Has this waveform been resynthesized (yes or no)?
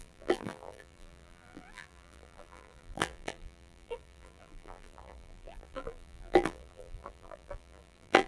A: yes